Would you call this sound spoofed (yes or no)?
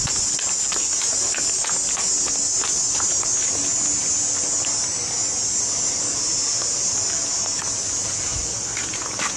no